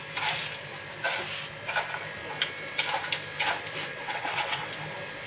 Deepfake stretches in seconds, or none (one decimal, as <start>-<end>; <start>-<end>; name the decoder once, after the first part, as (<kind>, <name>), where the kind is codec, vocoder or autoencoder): 3.9-4.6 (vocoder, WaveNeXt)